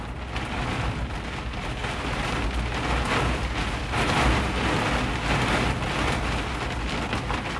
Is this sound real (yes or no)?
yes